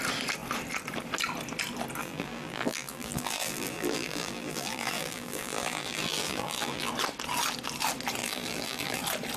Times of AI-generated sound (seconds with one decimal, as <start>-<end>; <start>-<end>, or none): 2.0-6.9; 8.2-9.0